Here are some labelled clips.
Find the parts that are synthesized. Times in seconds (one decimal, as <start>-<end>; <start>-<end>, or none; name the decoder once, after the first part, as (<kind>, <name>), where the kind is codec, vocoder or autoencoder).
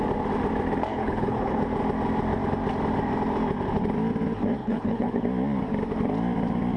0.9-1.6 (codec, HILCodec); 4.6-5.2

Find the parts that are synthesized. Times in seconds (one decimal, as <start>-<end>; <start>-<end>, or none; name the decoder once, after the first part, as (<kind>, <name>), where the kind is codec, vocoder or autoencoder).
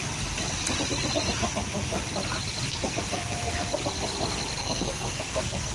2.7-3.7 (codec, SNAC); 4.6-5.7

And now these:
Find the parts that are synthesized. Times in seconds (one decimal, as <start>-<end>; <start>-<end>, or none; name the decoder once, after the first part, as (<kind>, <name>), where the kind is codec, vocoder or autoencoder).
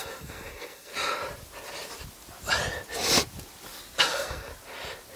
0.0-0.9 (codec, SNAC); 4.0-4.5